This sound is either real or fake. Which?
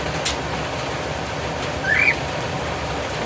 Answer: real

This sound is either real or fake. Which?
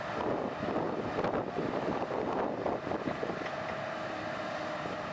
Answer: real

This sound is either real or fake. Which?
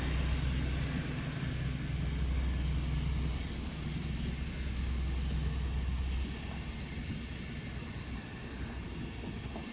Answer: real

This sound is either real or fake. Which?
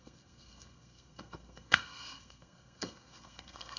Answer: fake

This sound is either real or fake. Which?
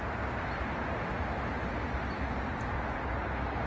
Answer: real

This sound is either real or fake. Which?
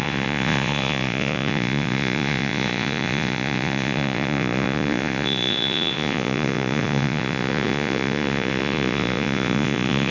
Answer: fake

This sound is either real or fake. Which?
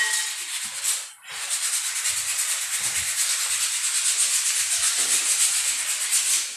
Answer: real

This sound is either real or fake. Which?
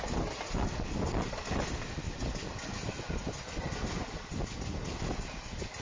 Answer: real